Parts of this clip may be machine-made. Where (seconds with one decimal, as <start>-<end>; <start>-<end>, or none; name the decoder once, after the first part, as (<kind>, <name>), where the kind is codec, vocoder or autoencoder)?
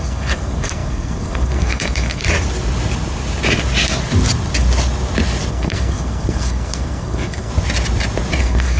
0.0-2.2 (codec, SNAC); 5.5-7.5; 8.4-8.8